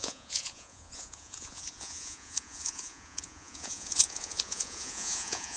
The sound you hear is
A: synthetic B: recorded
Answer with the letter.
A